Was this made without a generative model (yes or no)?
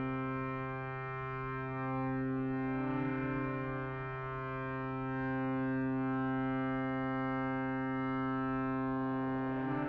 yes